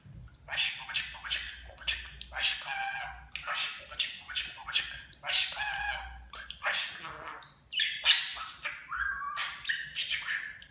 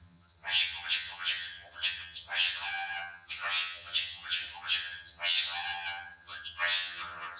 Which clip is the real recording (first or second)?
first